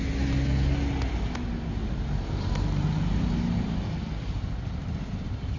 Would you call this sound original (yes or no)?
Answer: yes